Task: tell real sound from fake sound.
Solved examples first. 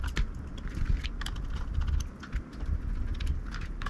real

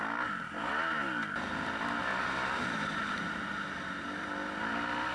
real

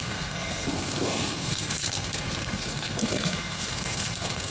fake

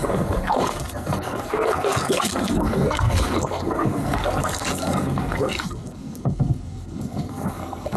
fake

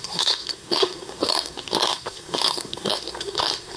fake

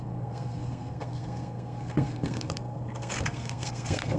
fake